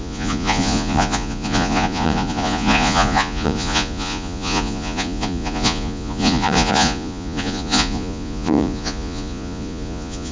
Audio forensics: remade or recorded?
remade